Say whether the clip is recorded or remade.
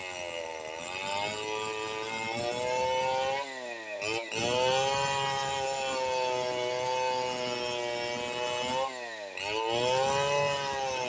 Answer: recorded